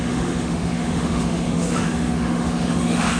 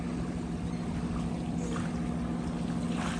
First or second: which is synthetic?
first